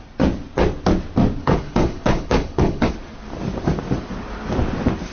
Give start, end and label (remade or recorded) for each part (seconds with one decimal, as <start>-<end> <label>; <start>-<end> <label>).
0.0-1.4 recorded; 1.4-2.9 remade; 2.9-5.1 recorded